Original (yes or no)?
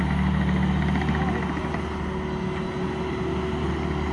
yes